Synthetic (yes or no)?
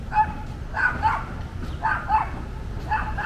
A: yes